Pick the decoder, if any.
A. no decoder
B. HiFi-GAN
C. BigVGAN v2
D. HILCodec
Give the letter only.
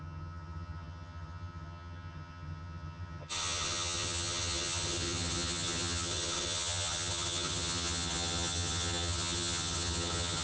B